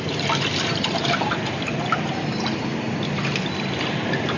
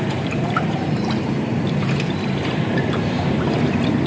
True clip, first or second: first